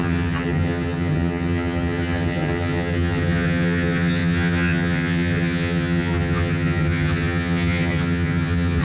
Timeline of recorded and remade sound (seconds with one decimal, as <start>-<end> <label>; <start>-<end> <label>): 0.0-8.8 remade